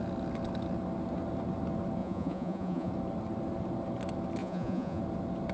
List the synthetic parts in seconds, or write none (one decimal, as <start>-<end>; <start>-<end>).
2.0-2.9; 4.4-5.0